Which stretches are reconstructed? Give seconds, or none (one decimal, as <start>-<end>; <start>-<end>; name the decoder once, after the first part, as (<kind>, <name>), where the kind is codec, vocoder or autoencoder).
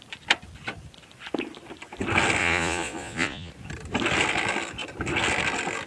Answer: 2.4-3.5 (vocoder, Vocos)